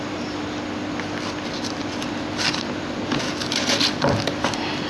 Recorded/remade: recorded